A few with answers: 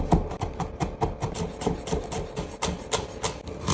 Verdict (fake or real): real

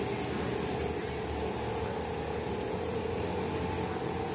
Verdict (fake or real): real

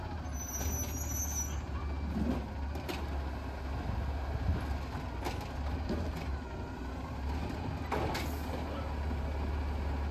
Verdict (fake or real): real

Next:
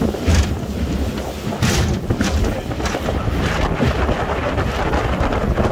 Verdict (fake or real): real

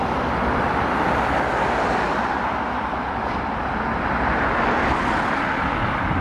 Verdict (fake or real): real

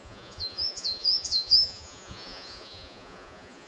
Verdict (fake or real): fake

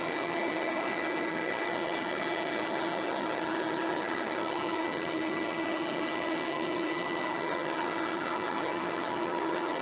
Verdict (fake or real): fake